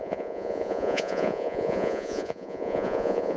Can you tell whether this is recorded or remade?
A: remade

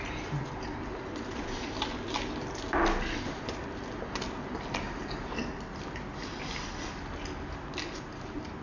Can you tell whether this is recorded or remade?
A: recorded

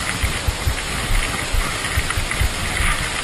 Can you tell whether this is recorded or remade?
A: recorded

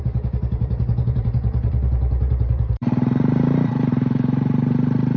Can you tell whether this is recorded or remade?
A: remade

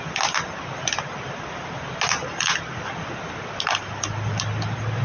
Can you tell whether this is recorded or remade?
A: recorded